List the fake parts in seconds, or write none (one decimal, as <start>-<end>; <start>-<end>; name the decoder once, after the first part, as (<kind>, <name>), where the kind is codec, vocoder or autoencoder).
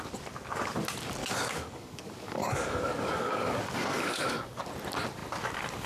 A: 1.2-4.6 (codec, DAC)